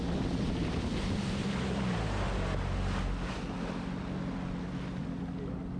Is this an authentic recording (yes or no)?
yes